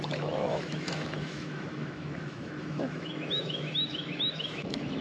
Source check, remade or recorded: remade